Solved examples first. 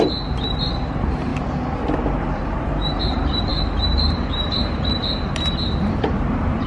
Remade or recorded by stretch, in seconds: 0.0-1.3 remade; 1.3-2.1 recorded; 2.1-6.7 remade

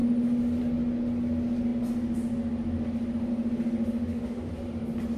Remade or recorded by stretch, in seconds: 0.0-3.8 recorded; 3.8-4.5 remade; 4.5-5.2 recorded

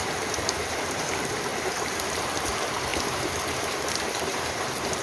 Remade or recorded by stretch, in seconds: 0.0-5.0 remade